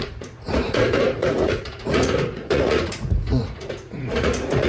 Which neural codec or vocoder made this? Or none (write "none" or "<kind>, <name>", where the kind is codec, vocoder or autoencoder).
vocoder, Vocos